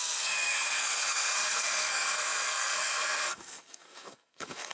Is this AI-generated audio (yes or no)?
yes